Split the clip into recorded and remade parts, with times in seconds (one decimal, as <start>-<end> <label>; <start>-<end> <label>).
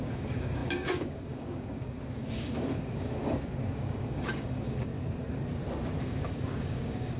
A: 0.0-4.9 remade; 4.9-6.0 recorded; 6.0-7.2 remade